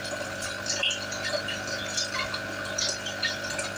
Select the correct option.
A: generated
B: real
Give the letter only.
A